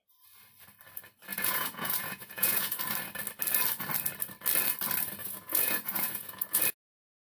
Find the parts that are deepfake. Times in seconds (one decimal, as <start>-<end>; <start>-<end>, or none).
1.3-2.8; 5.2-6.6